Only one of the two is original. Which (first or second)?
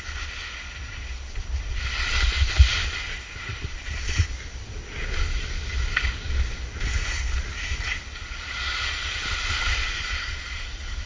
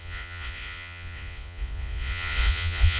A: first